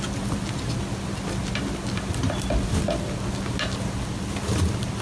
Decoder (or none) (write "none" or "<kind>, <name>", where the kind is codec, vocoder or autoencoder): none